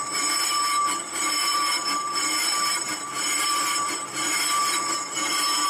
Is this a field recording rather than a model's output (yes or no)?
no